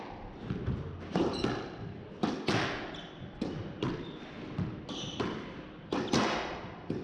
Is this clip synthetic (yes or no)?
no